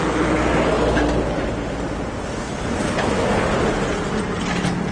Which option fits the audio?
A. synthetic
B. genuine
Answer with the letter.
B